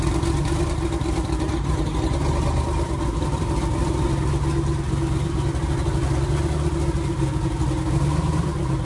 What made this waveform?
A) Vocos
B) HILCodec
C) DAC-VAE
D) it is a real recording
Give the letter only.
D